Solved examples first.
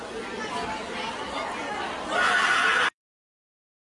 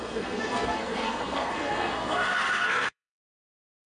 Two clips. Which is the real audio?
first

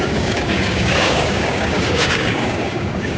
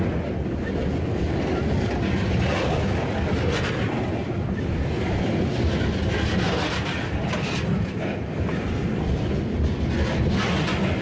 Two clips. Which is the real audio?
second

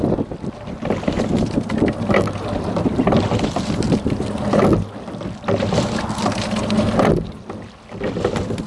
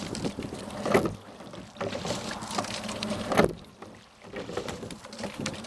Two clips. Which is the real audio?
first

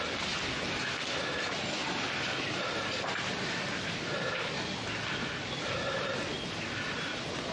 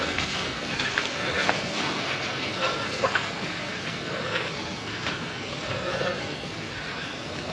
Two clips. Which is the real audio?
first